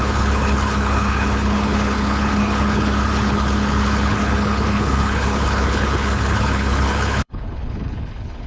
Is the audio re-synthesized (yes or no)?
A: yes